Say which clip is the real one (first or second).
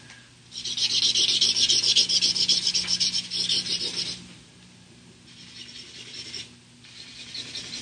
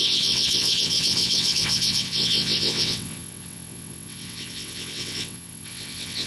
first